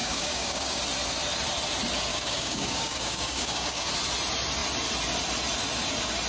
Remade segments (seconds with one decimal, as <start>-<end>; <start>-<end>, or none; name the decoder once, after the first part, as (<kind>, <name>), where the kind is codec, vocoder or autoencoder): 0.0-0.8 (codec, DAC); 2.1-3.9